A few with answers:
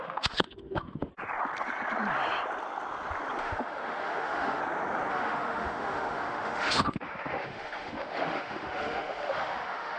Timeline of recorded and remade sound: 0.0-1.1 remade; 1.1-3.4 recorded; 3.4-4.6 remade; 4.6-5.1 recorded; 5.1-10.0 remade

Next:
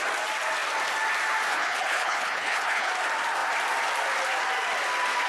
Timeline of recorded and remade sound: 0.0-1.5 recorded; 1.5-2.9 remade; 2.9-5.3 recorded

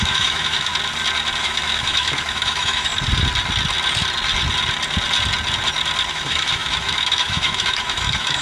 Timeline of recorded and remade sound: 0.0-0.7 remade; 0.7-1.4 recorded; 1.4-2.9 remade; 2.9-6.1 recorded; 6.1-8.4 remade